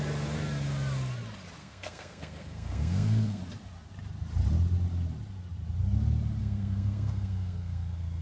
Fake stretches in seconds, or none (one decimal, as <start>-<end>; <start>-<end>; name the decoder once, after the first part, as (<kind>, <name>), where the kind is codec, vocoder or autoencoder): 1.6-3.4 (codec, SNAC); 6.4-8.2